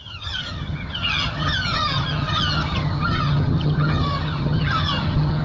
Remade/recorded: remade